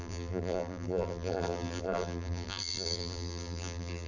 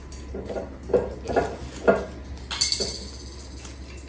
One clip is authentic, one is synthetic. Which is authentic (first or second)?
second